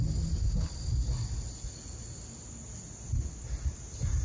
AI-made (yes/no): no